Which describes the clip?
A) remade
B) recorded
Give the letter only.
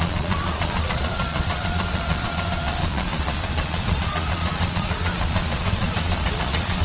A